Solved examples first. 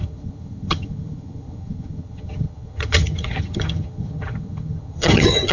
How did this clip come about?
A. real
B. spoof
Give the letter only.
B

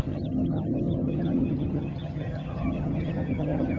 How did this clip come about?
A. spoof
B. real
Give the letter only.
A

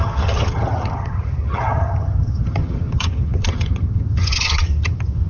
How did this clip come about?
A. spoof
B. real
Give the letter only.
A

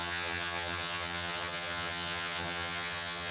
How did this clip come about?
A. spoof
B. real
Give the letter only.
A